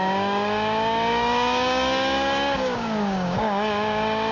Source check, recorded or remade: remade